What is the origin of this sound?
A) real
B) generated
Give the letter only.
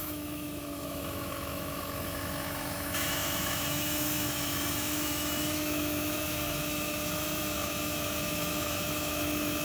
B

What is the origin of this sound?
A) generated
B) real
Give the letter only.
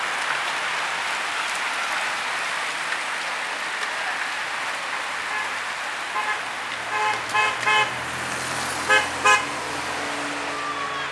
B